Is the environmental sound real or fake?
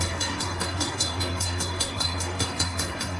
fake